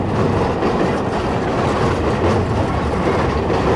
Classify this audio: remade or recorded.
recorded